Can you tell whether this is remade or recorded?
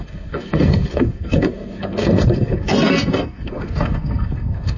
remade